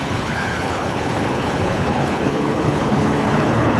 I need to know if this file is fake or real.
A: fake